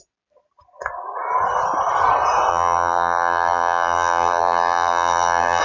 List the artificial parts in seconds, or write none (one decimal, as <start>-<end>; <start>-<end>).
2.5-5.6